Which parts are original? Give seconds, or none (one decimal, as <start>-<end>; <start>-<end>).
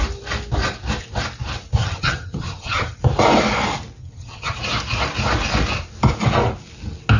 0.0-1.8; 3.0-4.0; 4.6-7.2